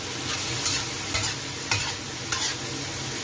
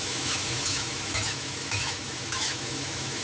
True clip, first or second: first